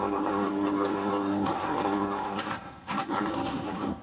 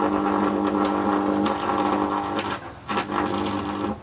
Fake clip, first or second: first